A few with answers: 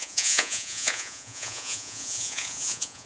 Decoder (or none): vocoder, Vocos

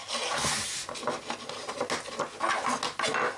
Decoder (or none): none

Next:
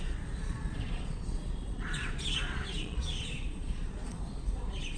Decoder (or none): vocoder, Vocos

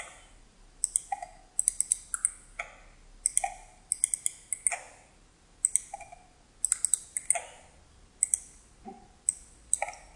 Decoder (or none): none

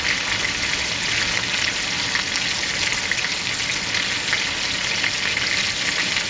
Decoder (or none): none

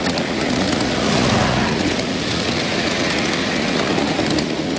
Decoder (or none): vocoder, Vocos